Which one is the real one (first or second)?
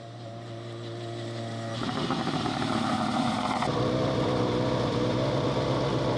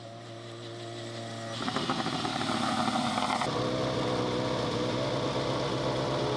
second